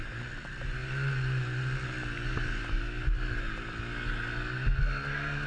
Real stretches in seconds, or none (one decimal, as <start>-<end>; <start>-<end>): 0.0-5.5